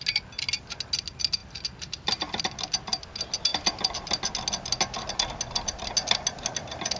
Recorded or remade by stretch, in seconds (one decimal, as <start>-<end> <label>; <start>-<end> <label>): 0.0-7.0 recorded